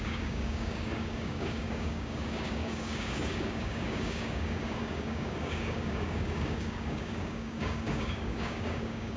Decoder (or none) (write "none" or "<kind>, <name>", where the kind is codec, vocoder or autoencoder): codec, DAC